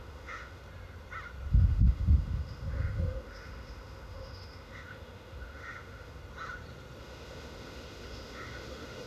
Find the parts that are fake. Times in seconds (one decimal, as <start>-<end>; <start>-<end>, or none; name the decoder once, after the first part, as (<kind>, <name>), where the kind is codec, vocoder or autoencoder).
0.0-0.6 (autoencoder, DAC-VAE); 1.5-6.2; 7.0-9.1